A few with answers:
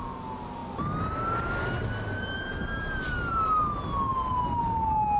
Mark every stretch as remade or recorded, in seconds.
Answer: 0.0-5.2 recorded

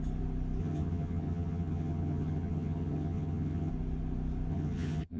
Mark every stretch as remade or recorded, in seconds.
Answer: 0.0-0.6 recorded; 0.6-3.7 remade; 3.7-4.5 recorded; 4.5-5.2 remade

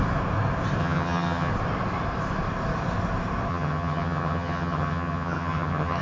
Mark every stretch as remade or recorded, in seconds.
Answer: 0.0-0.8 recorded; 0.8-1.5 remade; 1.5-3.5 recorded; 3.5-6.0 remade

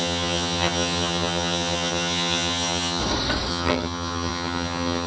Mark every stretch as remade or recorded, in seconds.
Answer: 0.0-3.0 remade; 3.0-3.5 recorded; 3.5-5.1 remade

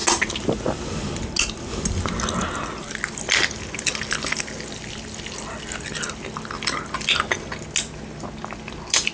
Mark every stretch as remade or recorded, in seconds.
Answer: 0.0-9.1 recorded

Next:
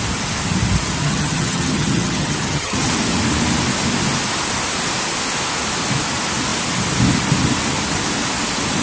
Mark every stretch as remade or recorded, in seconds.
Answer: 0.0-1.0 recorded; 1.0-2.9 remade; 2.9-8.8 recorded

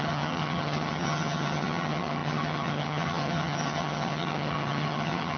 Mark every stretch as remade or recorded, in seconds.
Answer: 0.0-5.4 remade